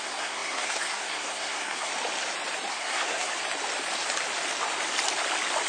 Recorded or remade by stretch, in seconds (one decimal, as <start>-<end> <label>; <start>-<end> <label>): 0.0-1.9 remade; 1.9-2.7 recorded; 2.7-3.3 remade; 3.3-5.7 recorded